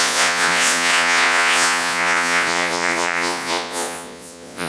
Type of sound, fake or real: fake